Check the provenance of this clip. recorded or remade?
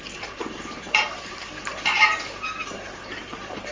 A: remade